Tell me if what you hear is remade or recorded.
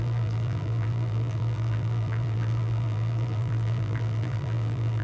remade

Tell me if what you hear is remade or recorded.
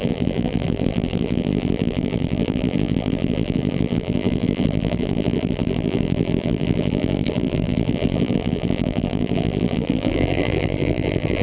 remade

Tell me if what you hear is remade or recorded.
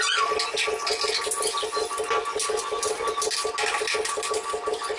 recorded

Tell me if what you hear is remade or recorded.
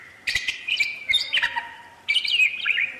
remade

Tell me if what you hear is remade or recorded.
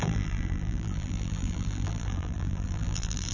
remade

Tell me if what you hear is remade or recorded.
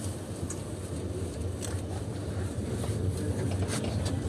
recorded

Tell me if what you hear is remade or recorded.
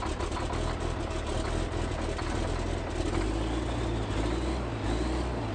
recorded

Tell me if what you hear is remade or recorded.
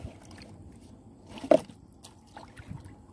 remade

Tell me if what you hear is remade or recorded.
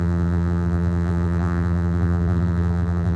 remade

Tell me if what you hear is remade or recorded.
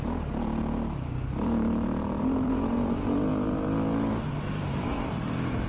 remade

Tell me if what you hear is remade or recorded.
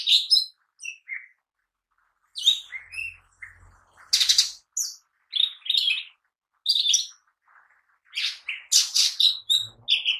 recorded